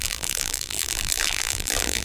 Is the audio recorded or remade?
remade